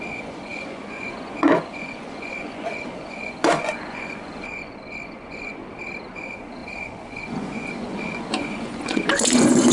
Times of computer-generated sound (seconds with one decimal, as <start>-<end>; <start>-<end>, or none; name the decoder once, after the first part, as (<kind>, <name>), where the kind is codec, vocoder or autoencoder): 0.0-5.6 (vocoder, Vocos); 6.1-9.7